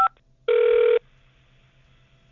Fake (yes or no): no